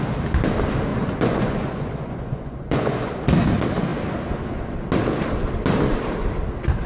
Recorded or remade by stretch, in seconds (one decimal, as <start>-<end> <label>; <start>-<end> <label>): 0.0-0.9 recorded; 0.9-3.1 remade; 3.1-6.9 recorded